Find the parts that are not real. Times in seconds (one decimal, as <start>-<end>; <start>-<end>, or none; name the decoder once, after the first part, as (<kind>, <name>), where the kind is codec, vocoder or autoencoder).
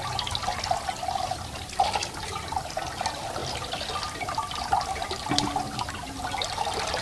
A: none